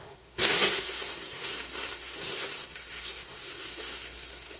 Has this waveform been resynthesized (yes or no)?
yes